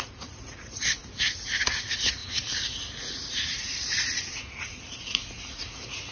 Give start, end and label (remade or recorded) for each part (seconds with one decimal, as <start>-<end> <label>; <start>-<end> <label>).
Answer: 0.0-1.0 remade; 1.0-1.6 recorded; 1.6-6.1 remade